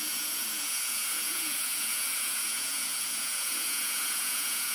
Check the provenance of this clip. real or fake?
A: fake